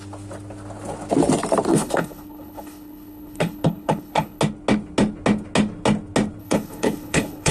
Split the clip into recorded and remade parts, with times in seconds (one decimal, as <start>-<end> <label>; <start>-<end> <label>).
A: 0.0-1.7 recorded; 1.7-4.4 remade; 4.4-6.4 recorded; 6.4-7.5 remade